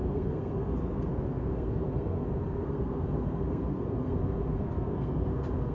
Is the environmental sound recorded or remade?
remade